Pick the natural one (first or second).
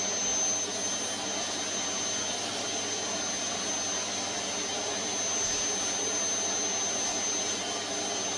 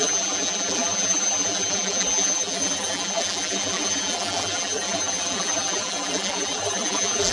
first